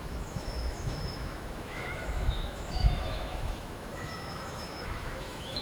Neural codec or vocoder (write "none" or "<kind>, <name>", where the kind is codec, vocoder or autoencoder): autoencoder, DAC-VAE